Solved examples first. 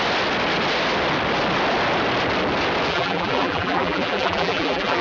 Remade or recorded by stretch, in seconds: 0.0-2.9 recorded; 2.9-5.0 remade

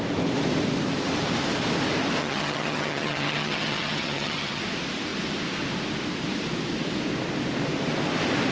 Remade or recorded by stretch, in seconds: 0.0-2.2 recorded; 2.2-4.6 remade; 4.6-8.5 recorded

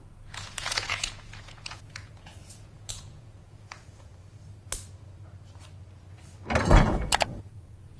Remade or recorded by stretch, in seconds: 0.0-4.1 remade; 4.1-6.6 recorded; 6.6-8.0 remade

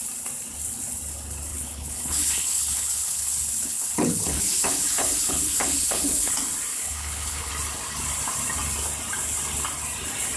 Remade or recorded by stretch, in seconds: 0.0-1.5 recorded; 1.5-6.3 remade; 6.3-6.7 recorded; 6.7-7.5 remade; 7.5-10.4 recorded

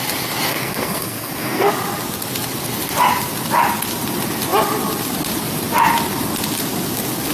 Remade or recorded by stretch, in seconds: 0.0-0.5 recorded; 0.5-1.7 remade; 1.7-7.3 recorded

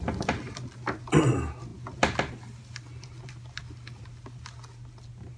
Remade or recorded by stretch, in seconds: 0.0-5.4 recorded

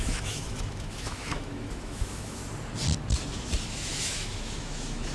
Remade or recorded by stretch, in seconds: 0.0-2.4 remade; 2.4-3.3 recorded; 3.3-5.1 remade

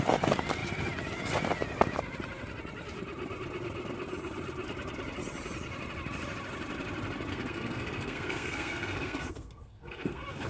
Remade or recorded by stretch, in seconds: 0.0-7.3 recorded; 7.3-10.5 remade